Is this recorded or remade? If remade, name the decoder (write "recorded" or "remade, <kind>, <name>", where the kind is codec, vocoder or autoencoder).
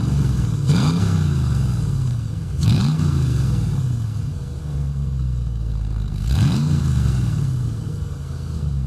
remade, codec, SNAC